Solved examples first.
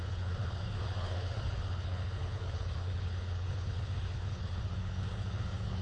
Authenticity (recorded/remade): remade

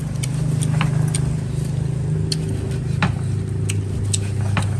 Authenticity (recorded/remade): recorded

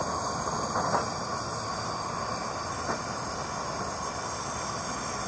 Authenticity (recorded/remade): recorded